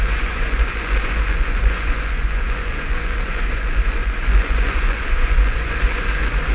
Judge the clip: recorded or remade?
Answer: remade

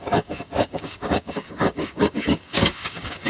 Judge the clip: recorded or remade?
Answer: remade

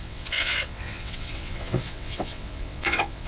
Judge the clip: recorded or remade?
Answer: remade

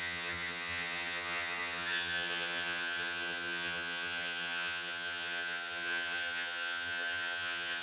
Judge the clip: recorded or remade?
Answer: remade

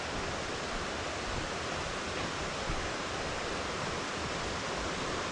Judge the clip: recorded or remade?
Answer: recorded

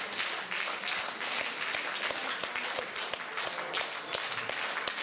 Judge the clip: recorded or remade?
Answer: recorded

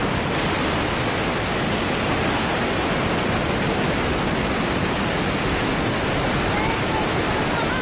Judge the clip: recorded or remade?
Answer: recorded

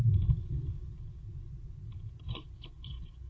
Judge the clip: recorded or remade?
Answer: recorded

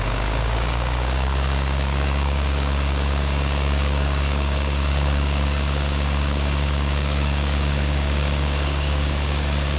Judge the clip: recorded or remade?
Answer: remade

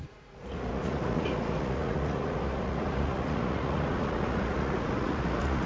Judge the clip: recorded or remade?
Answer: remade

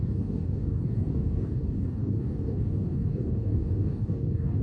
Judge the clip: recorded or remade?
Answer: remade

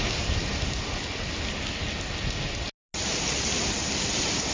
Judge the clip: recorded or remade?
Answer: recorded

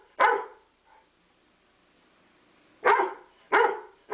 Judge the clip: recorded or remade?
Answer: recorded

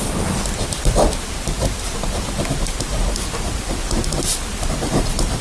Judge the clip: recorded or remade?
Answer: remade